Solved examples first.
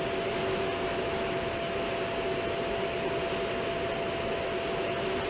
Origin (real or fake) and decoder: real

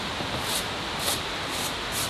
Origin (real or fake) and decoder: real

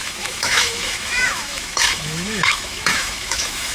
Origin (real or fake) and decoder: fake, autoencoder, DAC-VAE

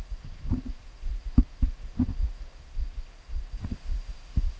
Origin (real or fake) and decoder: fake, autoencoder, DAC-VAE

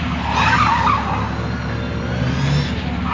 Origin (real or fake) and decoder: real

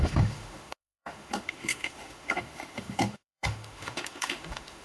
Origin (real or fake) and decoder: fake, autoencoder, DAC-VAE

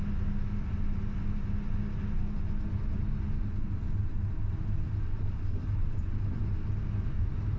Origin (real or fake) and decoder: real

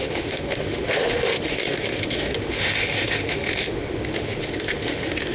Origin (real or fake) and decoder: fake, autoencoder, DAC-VAE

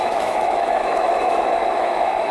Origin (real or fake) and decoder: fake, autoencoder, DAC-VAE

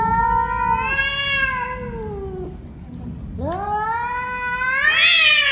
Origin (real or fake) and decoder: real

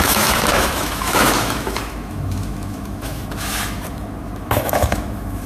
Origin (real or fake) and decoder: fake, autoencoder, DAC-VAE